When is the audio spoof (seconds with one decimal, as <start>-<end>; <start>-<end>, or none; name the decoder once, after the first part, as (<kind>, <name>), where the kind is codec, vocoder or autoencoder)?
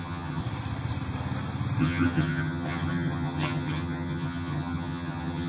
0.0-0.4 (vocoder, HiFi-GAN); 1.8-5.5